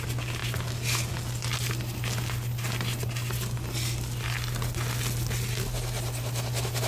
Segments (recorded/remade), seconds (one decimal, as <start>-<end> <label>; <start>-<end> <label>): 0.0-6.9 recorded